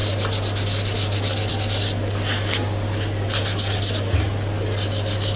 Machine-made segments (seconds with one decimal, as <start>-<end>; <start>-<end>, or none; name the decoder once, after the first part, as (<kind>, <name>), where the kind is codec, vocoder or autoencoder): none